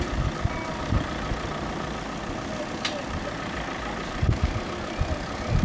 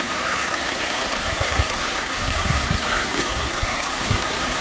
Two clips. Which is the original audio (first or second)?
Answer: first